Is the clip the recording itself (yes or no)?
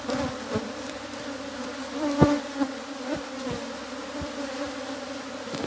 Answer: no